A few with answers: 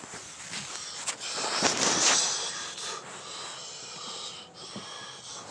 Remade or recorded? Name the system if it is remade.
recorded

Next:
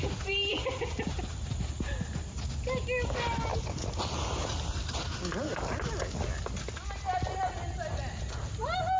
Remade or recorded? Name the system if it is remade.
recorded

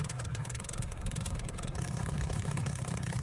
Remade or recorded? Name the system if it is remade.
remade, codec, SNAC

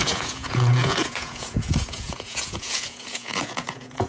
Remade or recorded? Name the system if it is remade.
remade, vocoder, Vocos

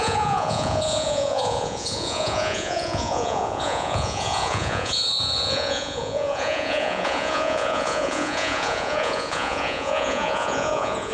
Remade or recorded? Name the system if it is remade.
remade, vocoder, Vocos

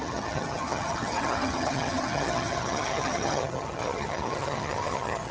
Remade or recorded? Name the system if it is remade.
remade, vocoder, HiFi-GAN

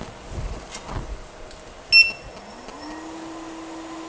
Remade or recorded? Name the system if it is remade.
recorded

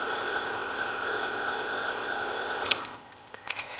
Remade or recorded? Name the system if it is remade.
remade, codec, ZipCodec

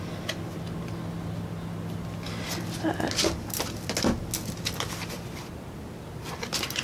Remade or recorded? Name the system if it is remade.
recorded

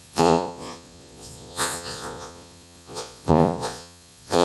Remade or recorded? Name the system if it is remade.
remade, vocoder, Vocos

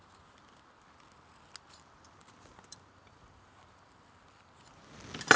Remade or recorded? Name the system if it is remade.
recorded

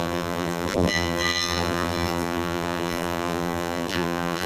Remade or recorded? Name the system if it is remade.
remade, vocoder, BigVGAN v2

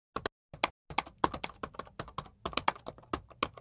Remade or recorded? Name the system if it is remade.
recorded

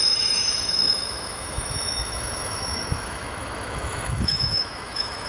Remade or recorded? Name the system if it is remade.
remade, autoencoder, DAC-VAE